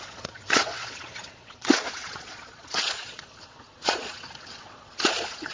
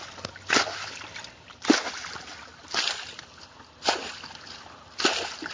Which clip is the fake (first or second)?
first